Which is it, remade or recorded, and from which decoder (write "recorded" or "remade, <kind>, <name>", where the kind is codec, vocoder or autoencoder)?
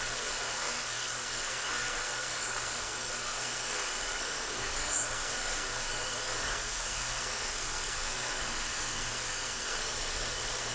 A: remade, codec, SNAC